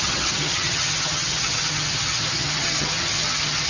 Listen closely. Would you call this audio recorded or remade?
remade